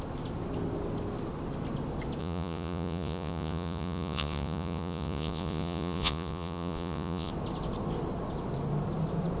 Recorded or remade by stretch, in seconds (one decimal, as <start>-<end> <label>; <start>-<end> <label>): 0.0-2.2 recorded; 2.2-7.3 remade; 7.3-9.4 recorded